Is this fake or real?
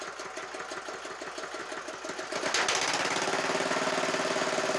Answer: real